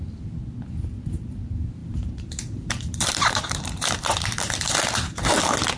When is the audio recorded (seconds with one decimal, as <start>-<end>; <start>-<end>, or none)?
0.0-1.8; 5.3-5.8